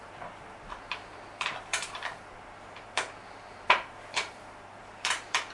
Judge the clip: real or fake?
fake